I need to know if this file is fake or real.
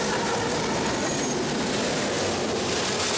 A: real